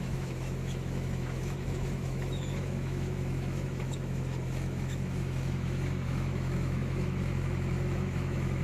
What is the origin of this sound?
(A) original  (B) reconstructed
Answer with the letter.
B